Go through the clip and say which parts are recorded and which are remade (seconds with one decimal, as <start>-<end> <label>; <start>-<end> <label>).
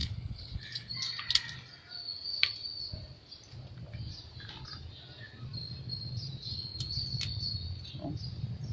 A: 0.0-0.9 remade; 0.9-8.7 recorded